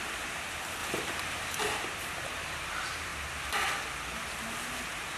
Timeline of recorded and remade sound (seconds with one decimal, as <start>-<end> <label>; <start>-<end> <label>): 0.0-3.1 remade; 3.1-4.7 recorded; 4.7-5.2 remade